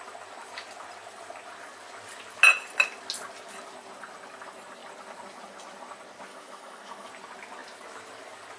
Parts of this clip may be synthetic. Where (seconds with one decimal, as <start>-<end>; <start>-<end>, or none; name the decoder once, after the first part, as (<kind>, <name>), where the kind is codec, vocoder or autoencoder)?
6.3-7.1 (autoencoder, DAC-VAE)